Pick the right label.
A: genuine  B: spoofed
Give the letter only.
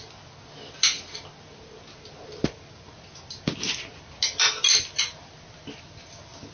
A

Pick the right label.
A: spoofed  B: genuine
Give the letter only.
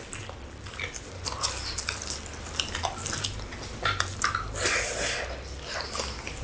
B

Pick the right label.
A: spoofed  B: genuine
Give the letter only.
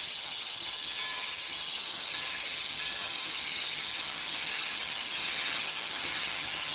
A